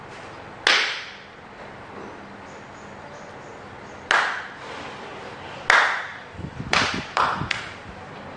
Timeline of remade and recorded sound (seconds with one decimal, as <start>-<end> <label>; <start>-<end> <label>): 0.0-6.1 recorded; 6.1-7.6 remade; 7.6-8.4 recorded